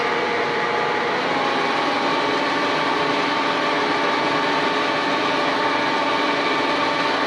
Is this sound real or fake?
real